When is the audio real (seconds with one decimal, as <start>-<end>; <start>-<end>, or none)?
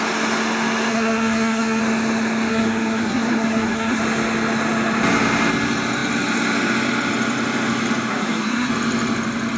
0.0-0.9; 1.8-2.5; 4.0-8.1; 8.7-9.6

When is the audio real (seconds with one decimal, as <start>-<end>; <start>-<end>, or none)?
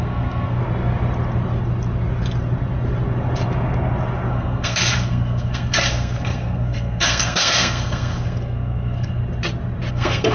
0.6-4.3; 9.2-9.9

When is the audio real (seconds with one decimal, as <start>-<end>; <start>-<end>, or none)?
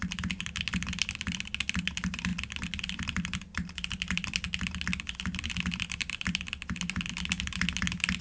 0.0-8.2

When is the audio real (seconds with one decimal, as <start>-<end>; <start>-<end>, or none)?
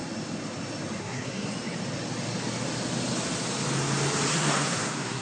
0.0-1.0; 1.5-4.3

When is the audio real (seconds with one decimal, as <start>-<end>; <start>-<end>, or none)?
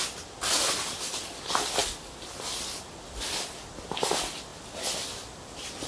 0.0-5.9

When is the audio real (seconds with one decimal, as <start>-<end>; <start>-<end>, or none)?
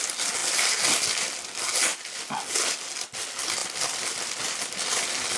0.0-5.4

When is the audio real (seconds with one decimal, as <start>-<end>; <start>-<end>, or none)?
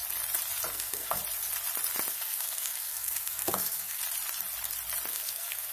0.0-0.7; 1.2-2.1; 4.0-5.1